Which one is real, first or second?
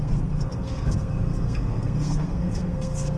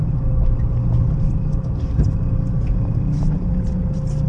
second